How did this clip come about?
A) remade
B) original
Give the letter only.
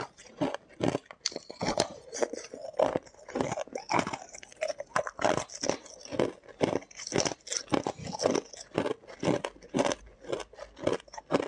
B